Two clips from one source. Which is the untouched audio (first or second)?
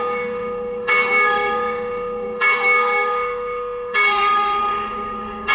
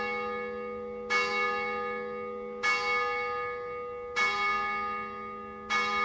second